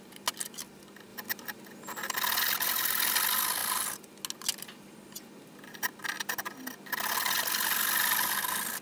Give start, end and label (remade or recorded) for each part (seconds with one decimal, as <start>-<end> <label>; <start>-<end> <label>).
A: 0.0-8.8 recorded